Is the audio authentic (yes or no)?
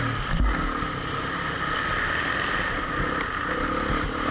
yes